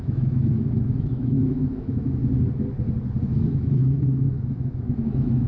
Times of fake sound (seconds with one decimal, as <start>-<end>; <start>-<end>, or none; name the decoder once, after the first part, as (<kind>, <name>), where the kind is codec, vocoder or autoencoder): 0.0-2.2 (autoencoder, DAC-VAE); 3.2-5.5